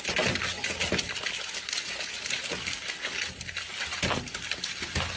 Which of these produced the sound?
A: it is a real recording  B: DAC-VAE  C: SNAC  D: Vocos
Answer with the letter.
A